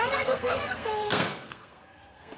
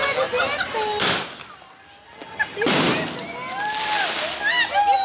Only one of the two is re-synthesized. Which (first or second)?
first